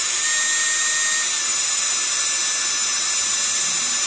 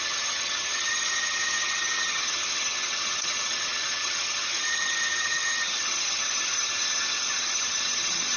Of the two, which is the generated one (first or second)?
second